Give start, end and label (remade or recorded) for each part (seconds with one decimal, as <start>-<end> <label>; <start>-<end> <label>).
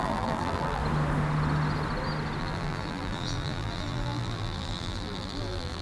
0.0-0.8 remade; 0.8-2.4 recorded; 2.4-5.8 remade